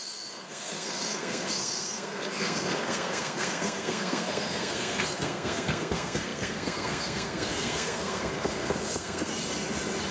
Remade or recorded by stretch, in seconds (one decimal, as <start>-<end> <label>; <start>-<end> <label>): 0.0-9.3 remade; 9.3-10.1 recorded